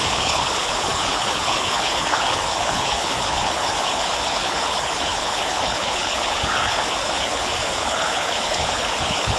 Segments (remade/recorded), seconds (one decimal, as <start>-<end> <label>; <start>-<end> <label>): 0.0-9.4 remade